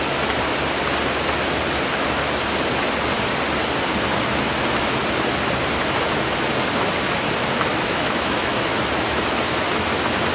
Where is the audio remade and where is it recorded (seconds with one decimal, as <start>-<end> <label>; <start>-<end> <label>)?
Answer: 0.0-7.7 recorded; 7.7-8.7 remade; 8.7-10.3 recorded